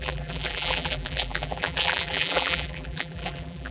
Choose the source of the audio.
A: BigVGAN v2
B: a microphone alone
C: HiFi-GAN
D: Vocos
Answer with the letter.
A